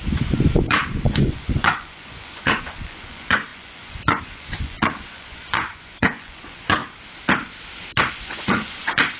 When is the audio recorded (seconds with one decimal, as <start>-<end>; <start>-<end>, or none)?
6.8-8.1